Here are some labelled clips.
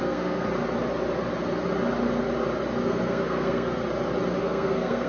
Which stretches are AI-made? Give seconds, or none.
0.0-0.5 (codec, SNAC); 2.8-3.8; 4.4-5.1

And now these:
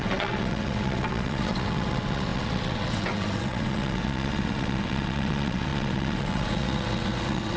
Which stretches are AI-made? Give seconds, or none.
0.0-7.6 (vocoder, WaveNeXt)

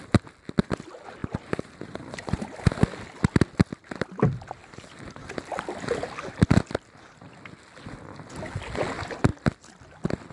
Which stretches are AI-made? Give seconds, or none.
1.2-2.7 (vocoder, BigVGAN v2)

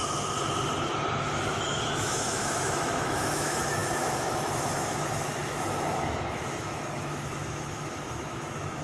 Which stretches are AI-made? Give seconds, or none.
1.5-8.8 (autoencoder, DAC-VAE)

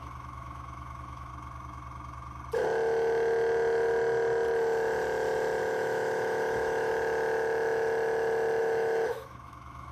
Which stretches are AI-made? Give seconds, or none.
0.0-1.3 (autoencoder, DAC-VAE); 5.6-6.9; 8.6-9.9

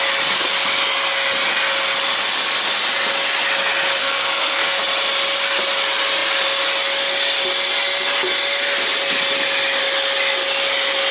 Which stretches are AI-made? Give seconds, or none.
4.0-4.8 (codec, SNAC)